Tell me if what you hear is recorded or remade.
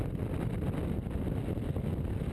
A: recorded